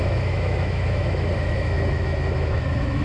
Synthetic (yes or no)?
yes